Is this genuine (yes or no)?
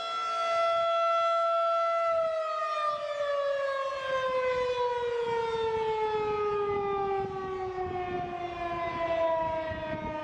yes